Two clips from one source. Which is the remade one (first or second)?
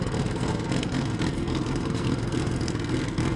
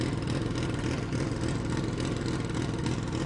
first